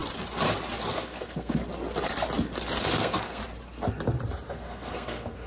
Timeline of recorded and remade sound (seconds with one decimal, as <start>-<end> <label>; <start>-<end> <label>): 0.0-0.9 recorded; 0.9-1.6 remade; 1.6-2.8 recorded; 2.8-3.4 remade; 3.4-4.5 recorded; 4.5-5.5 remade